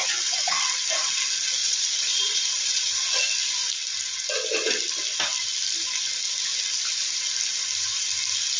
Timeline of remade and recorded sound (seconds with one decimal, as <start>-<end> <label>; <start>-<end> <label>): 0.0-1.6 recorded; 1.6-3.0 remade; 3.0-8.6 recorded